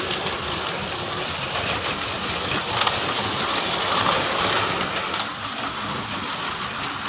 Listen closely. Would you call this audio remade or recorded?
remade